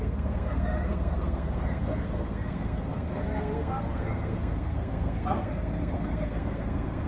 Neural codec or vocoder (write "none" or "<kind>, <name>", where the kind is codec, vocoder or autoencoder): codec, SNAC